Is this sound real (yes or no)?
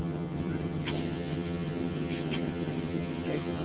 no